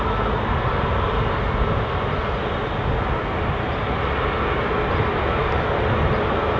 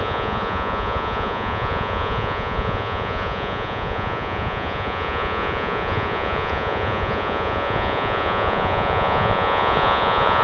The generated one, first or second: second